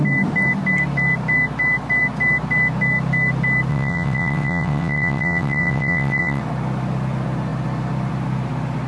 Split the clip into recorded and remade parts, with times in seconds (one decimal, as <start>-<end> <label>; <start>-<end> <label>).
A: 0.0-3.7 recorded; 3.7-6.4 remade; 6.4-8.9 recorded